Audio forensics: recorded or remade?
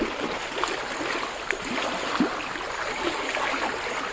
recorded